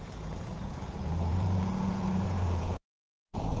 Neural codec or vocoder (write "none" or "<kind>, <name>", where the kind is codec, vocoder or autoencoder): vocoder, Vocos